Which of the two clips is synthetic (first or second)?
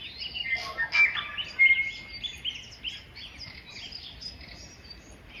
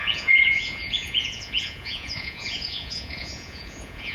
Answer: second